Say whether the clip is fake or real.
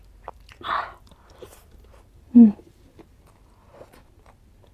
real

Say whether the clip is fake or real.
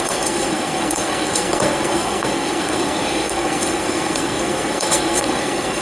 fake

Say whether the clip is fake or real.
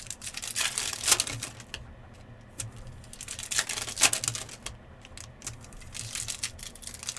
real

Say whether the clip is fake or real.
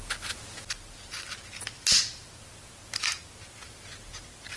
real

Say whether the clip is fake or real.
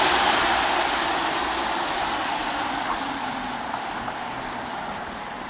fake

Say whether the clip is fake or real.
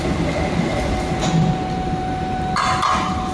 real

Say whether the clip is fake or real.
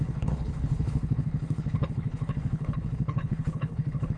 fake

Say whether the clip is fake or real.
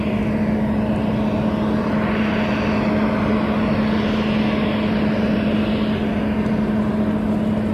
real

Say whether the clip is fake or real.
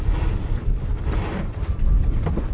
fake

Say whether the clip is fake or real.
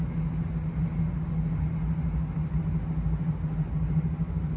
real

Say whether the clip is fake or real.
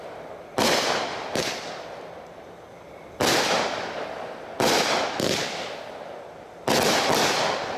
real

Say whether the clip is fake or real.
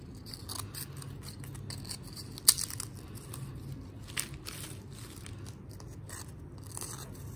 real